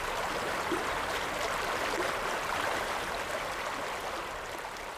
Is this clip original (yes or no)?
yes